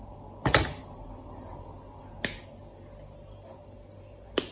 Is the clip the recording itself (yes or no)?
yes